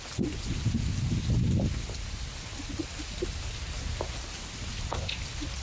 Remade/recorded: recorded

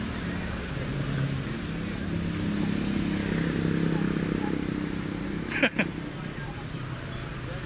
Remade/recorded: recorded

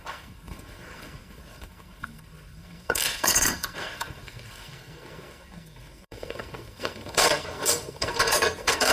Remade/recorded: remade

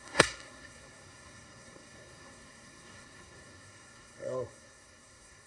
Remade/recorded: remade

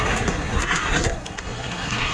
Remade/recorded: remade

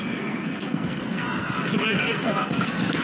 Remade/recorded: remade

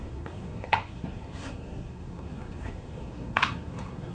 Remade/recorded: remade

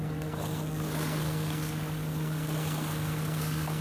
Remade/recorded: remade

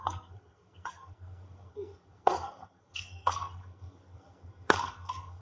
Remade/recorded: remade